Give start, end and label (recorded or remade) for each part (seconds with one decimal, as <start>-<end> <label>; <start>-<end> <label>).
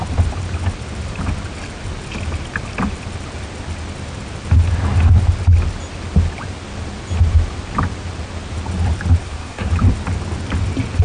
0.0-9.2 recorded; 9.2-9.7 remade; 9.7-11.0 recorded